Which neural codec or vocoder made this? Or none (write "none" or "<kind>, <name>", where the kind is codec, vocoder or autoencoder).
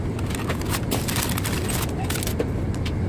none